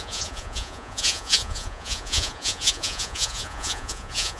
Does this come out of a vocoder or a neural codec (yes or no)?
yes